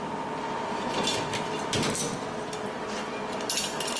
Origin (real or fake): real